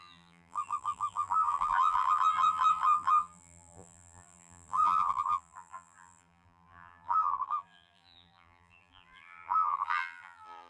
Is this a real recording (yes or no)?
no